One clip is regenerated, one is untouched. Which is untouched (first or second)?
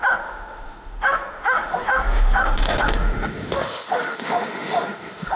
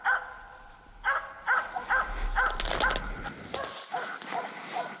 second